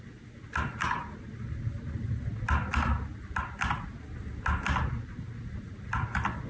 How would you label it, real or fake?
real